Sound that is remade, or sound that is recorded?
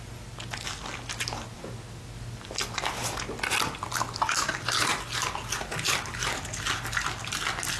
recorded